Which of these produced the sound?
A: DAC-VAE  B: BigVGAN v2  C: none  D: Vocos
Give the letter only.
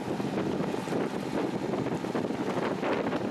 C